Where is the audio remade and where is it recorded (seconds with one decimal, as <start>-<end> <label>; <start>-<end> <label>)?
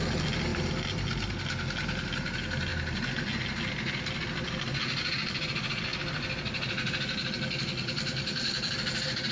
0.0-9.3 recorded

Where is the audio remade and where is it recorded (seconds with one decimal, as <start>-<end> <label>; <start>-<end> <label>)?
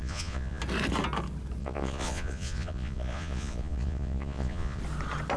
0.0-0.6 remade; 0.6-1.6 recorded; 1.6-4.8 remade; 4.8-5.4 recorded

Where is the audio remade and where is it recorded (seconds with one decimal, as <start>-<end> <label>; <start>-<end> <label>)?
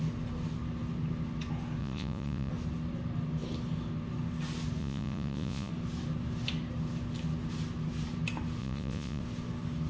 0.0-1.8 recorded; 1.8-2.5 remade; 2.5-4.8 recorded; 4.8-5.7 remade; 5.7-8.6 recorded; 8.6-9.2 remade; 9.2-9.9 recorded